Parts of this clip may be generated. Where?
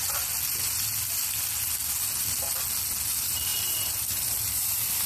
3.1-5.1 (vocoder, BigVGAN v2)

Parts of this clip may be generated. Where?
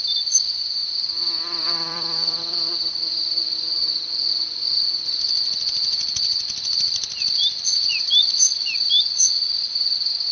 0.0-3.8 (vocoder, BigVGAN v2); 6.4-10.3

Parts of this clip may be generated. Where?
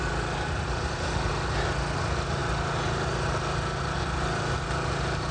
none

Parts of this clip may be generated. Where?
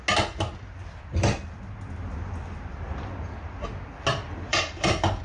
0.8-3.1 (vocoder, BigVGAN v2); 4.5-5.2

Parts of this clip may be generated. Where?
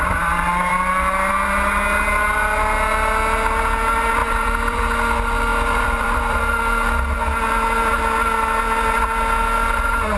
0.7-1.3 (vocoder, BigVGAN v2); 4.2-4.8; 5.5-6.4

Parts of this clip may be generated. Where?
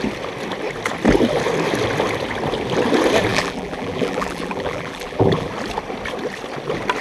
3.3-5.5 (vocoder, BigVGAN v2)